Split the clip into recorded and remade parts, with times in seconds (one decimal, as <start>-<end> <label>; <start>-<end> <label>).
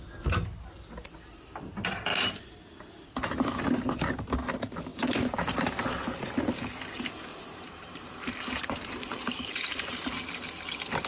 0.0-2.1 recorded; 2.1-2.9 remade; 2.9-7.3 recorded; 7.3-9.9 remade; 9.9-11.1 recorded